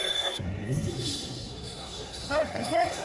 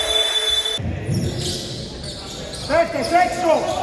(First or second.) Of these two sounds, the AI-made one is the first